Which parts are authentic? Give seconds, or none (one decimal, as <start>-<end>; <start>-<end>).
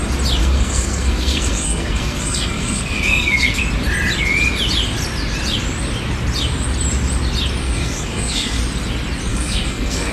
0.0-0.4; 3.6-7.6; 8.6-9.3